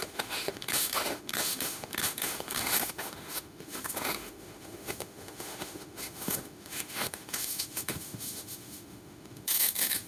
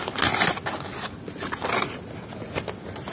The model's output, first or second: first